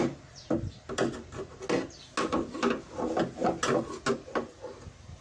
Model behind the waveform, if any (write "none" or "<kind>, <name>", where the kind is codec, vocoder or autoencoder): none